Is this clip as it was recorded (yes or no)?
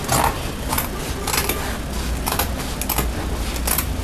yes